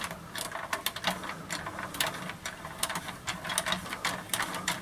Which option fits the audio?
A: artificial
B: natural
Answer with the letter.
B